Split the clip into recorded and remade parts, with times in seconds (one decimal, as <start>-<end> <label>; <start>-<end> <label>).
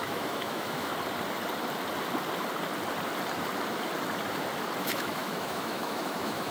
0.0-0.9 remade; 0.9-4.8 recorded; 4.8-6.5 remade